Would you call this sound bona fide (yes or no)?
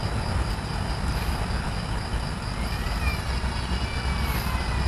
yes